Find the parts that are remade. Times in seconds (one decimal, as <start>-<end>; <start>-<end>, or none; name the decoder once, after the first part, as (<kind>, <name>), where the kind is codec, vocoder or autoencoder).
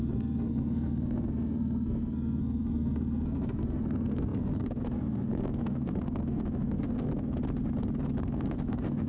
0.0-7.4 (codec, SNAC); 8.2-9.1